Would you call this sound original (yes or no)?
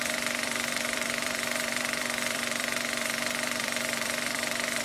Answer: no